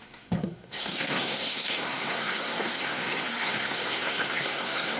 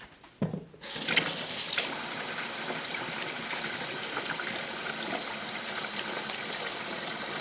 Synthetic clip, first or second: first